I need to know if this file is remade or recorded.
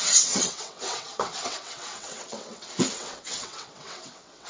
remade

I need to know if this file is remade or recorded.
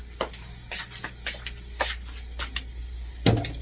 recorded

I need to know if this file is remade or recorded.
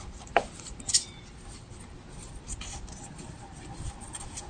recorded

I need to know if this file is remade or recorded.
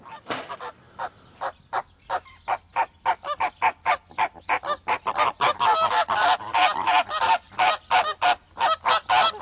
recorded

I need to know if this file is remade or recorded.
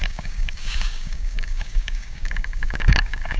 remade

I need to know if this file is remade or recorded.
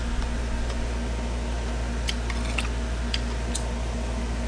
recorded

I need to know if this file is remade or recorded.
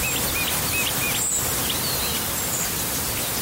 recorded